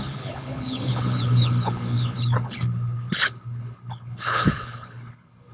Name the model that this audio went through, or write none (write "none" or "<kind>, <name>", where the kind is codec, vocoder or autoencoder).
codec, HILCodec